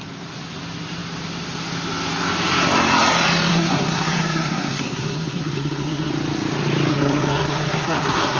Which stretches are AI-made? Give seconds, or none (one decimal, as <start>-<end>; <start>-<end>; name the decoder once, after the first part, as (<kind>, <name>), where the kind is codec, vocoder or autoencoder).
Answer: 3.5-6.1 (codec, SNAC); 6.9-8.4